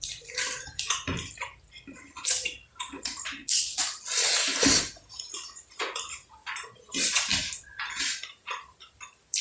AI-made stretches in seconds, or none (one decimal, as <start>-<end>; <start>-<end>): 0.0-3.4; 5.1-7.3; 8.0-9.4